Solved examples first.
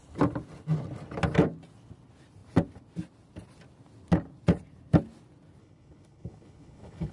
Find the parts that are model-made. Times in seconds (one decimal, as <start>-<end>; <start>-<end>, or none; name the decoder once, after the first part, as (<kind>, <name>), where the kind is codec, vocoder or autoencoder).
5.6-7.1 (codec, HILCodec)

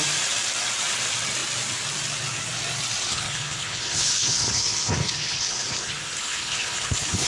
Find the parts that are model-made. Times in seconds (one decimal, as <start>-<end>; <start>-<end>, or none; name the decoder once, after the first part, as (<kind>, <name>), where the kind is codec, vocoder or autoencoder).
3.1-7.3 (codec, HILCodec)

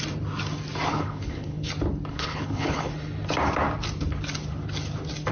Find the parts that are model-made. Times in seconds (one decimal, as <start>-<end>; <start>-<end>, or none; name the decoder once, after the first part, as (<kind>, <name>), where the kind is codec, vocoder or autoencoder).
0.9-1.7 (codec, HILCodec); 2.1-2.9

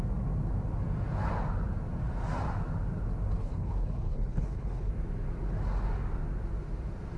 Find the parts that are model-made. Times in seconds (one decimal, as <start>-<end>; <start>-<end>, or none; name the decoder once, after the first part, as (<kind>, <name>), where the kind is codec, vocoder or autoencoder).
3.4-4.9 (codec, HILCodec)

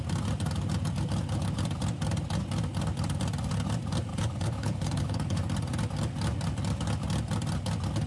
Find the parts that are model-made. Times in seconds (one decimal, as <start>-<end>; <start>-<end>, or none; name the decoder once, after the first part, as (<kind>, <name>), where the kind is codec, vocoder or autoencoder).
4.1-5.4 (codec, HILCodec)

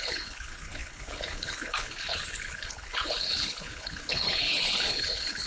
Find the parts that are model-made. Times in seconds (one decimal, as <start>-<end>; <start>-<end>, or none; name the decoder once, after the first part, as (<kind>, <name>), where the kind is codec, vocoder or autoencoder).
0.0-5.5 (codec, HILCodec)